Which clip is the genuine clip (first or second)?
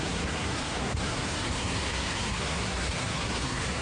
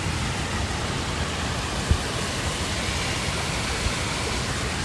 second